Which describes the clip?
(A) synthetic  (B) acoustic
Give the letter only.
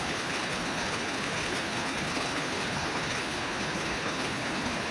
A